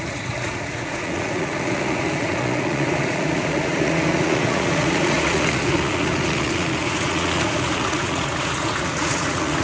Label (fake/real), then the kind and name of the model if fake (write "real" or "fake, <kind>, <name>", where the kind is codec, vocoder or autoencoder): fake, vocoder, Vocos